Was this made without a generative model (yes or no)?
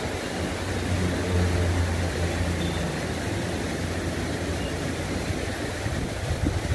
yes